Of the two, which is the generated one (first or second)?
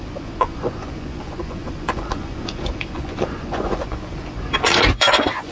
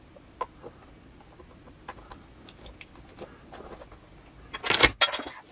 first